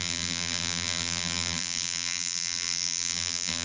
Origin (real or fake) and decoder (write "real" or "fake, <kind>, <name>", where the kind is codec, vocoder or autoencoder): fake, vocoder, BigVGAN v2